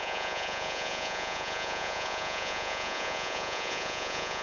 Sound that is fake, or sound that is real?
fake